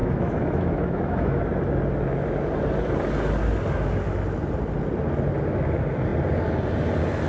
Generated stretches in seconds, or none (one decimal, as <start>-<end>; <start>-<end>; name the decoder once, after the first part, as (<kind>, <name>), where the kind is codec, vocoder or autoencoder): 0.0-1.4 (autoencoder, DAC-VAE)

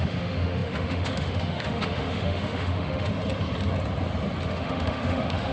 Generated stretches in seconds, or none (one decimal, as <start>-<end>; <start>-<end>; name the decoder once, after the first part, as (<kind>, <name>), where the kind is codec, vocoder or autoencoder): 0.0-3.1 (autoencoder, DAC-VAE); 4.5-5.5

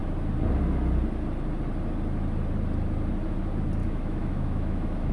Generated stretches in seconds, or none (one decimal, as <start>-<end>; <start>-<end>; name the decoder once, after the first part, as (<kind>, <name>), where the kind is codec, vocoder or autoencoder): 3.8-5.1 (autoencoder, DAC-VAE)

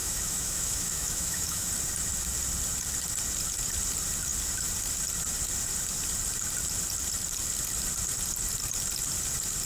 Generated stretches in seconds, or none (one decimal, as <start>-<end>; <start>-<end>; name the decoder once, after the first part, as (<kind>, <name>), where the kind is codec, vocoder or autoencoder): 0.0-1.7 (autoencoder, DAC-VAE)

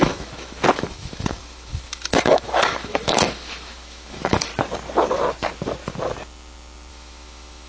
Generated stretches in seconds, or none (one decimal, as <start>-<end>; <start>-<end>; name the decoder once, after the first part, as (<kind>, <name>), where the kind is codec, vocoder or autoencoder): 0.0-4.5 (autoencoder, DAC-VAE); 6.9-7.7

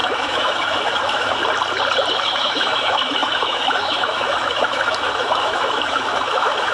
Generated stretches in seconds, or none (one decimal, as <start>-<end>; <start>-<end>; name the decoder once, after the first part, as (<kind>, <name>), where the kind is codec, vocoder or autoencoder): 0.0-1.4 (autoencoder, DAC-VAE); 2.1-6.7

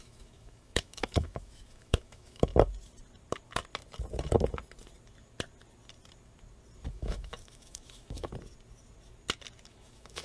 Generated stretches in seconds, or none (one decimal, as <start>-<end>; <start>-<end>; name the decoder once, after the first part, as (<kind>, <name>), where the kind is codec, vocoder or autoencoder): 0.0-2.5 (autoencoder, DAC-VAE); 6.9-8.3; 9.7-10.2